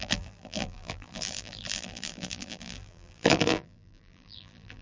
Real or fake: fake